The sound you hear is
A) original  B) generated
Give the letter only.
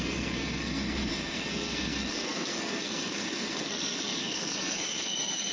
B